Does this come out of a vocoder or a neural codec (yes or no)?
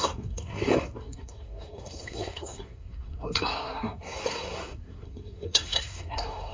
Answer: yes